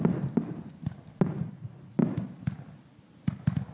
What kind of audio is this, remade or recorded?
recorded